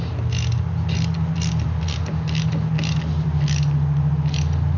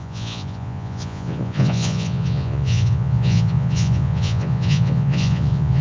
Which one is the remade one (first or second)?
second